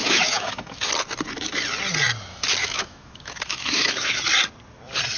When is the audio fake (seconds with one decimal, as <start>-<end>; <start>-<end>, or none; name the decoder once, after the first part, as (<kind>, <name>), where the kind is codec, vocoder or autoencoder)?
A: 0.0-0.9 (autoencoder, DAC-VAE); 2.6-4.2